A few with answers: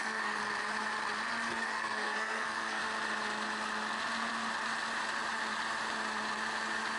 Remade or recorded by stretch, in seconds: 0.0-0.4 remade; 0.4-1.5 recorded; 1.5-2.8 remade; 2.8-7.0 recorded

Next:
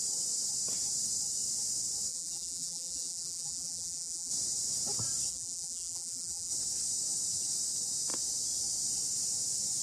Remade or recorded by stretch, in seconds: 0.0-2.1 recorded; 2.1-4.3 remade; 4.3-5.3 recorded; 5.3-6.5 remade; 6.5-9.8 recorded

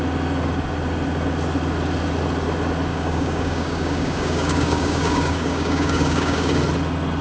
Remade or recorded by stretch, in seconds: 0.0-2.9 recorded; 2.9-6.6 remade; 6.6-7.2 recorded

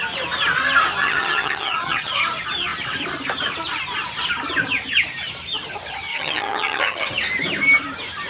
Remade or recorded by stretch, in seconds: 0.0-1.0 recorded; 1.0-2.1 remade; 2.1-6.1 recorded; 6.1-7.1 remade; 7.1-8.3 recorded

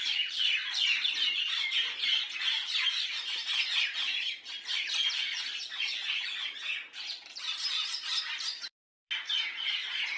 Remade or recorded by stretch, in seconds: 0.0-10.2 remade

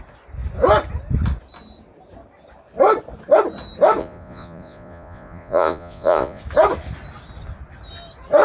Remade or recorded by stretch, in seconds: 0.0-4.0 recorded; 4.0-6.4 remade; 6.4-8.4 recorded